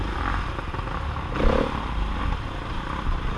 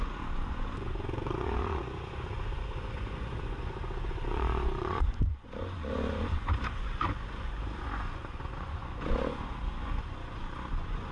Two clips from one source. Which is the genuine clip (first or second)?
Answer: first